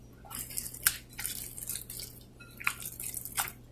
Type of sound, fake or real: real